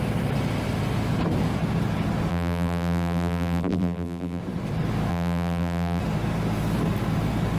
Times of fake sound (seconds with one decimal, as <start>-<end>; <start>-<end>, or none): 2.3-4.4; 5.1-6.0